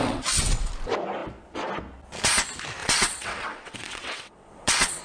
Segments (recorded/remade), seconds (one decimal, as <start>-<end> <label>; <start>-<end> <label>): 0.0-0.7 remade; 0.7-2.8 recorded; 2.8-5.0 remade